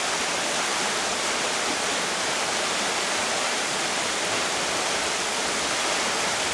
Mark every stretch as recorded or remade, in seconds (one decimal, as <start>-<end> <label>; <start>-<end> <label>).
0.0-0.7 recorded; 0.7-4.6 remade; 4.6-6.5 recorded